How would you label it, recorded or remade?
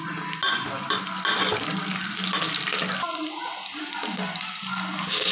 recorded